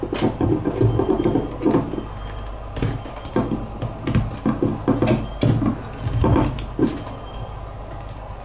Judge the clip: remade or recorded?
recorded